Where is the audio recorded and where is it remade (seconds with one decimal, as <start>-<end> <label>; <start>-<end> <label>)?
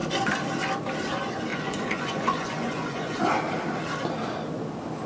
0.0-1.5 recorded; 1.5-3.2 remade; 3.2-5.1 recorded